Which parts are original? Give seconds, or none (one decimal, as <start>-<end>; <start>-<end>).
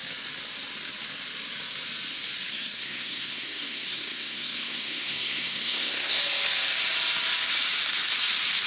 0.0-2.5; 6.2-8.7